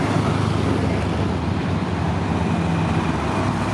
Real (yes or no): yes